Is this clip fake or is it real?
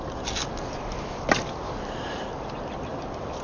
real